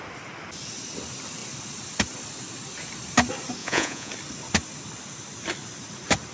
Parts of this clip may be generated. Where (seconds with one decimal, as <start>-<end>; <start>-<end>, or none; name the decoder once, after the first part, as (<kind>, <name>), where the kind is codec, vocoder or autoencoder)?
3.6-4.1 (vocoder, Vocos)